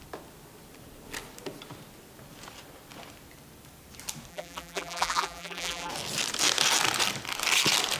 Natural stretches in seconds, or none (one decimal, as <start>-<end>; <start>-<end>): 0.0-4.3; 5.9-8.0